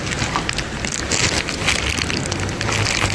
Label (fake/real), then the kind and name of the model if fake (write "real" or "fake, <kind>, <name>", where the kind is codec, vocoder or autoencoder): real